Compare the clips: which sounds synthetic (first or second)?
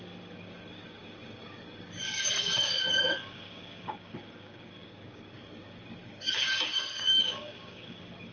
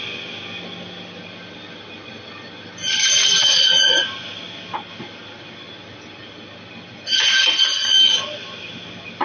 first